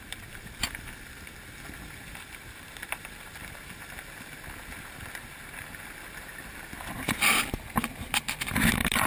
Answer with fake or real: real